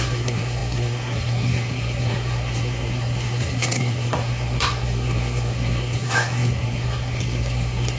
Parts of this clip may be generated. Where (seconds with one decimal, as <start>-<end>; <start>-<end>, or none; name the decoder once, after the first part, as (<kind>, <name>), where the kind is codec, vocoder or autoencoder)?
0.0-8.0 (codec, SNAC)

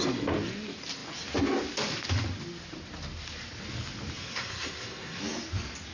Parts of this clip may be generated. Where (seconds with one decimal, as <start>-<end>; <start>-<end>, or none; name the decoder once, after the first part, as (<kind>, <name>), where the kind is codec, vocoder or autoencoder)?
4.2-5.2 (codec, SNAC)